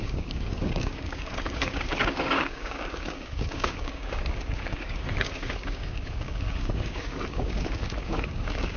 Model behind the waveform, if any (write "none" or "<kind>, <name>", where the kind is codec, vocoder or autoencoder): codec, DAC